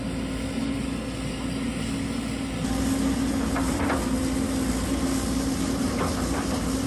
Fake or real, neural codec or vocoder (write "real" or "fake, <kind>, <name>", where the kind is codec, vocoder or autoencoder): real